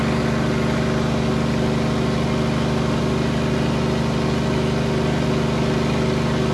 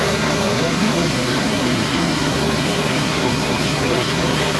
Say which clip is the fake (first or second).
second